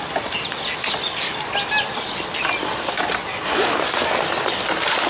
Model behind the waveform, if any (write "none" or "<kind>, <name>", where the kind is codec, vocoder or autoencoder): none